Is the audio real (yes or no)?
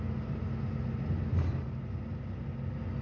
yes